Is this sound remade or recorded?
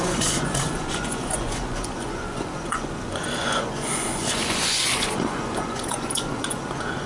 remade